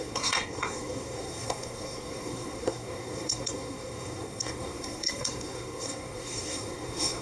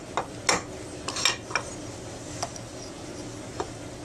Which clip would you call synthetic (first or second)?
first